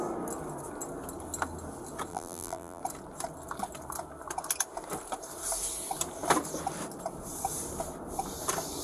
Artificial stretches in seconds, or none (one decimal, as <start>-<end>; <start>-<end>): 2.1-2.8